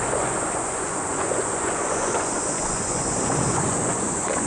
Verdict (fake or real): fake